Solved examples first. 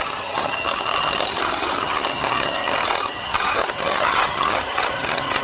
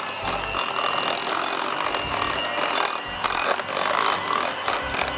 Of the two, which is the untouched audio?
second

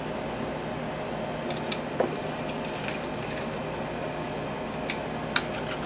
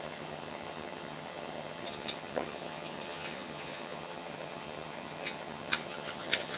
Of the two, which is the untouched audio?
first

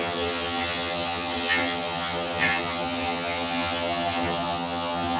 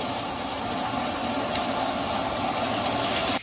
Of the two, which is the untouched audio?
second